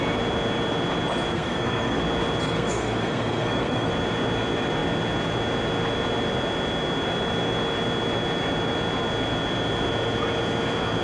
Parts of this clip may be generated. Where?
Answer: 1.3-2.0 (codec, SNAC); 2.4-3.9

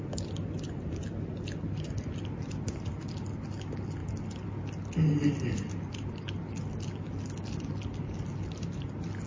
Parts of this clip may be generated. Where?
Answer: none

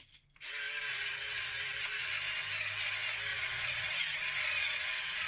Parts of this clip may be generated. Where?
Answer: 0.9-2.1 (vocoder, Vocos); 3.3-3.9

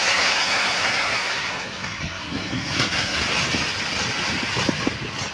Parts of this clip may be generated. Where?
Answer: 0.0-3.2 (codec, SNAC)

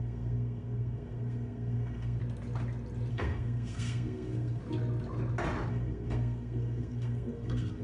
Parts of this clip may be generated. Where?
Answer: 0.0-2.2 (codec, SNAC); 3.1-4.6; 5.7-7.8

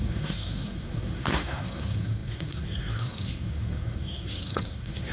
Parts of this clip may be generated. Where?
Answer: 0.0-5.1 (codec, SNAC)